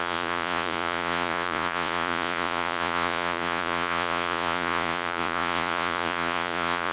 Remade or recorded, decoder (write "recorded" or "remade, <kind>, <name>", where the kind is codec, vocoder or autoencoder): remade, vocoder, Vocos